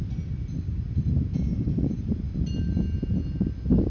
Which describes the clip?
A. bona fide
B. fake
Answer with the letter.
A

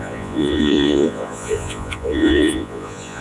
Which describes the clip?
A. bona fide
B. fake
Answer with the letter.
B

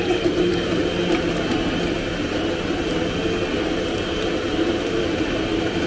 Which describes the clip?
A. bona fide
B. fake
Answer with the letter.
B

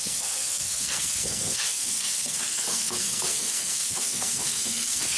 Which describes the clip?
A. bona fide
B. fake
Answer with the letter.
B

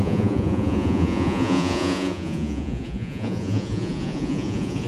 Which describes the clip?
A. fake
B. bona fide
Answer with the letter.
A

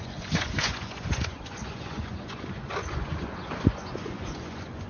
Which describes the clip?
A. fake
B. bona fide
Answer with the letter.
A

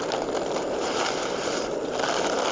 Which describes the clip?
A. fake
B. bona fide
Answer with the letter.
B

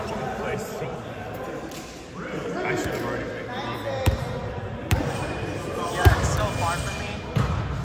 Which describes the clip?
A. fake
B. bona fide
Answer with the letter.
A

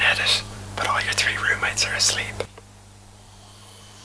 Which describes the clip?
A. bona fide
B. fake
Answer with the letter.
B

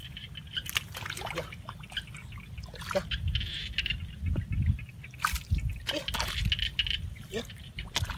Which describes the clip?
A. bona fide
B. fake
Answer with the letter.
A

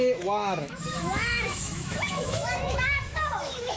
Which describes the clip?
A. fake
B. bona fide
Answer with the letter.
A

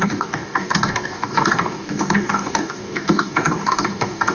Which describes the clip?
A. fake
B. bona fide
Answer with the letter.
A